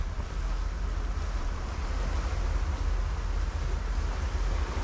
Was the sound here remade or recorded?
recorded